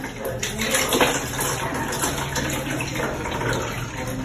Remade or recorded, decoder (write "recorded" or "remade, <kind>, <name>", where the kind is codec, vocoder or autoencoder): recorded